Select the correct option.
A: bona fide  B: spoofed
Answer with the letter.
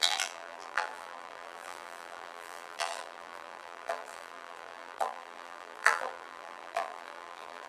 B